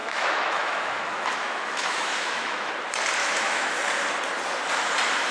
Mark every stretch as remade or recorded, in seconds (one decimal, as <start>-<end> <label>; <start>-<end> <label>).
0.0-2.7 remade; 2.7-3.2 recorded; 3.2-3.7 remade; 3.7-5.3 recorded